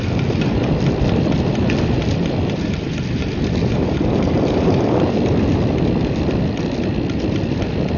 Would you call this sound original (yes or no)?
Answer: no